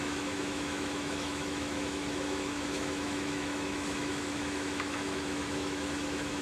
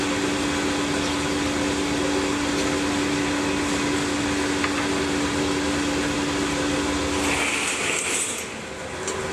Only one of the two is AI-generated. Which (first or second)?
first